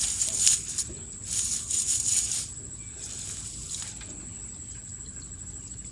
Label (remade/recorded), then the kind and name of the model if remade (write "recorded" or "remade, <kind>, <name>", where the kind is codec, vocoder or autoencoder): recorded